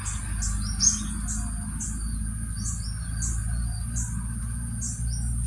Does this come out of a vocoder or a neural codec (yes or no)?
no